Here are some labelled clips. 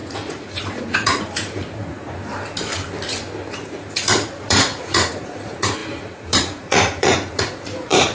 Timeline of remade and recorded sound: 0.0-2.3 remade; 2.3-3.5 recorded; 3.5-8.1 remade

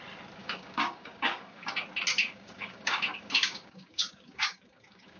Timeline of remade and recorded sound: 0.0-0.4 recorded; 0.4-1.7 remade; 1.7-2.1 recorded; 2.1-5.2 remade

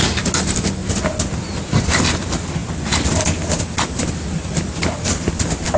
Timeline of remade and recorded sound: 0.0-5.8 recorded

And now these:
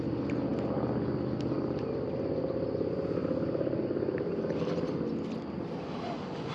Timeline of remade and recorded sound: 0.0-6.5 recorded